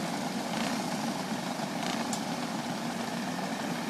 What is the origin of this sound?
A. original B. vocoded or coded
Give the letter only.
A